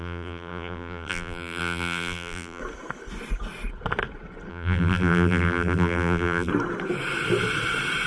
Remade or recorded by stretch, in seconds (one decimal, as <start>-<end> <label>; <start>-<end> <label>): 0.0-2.6 remade; 2.6-4.5 recorded; 4.5-6.5 remade; 6.5-8.1 recorded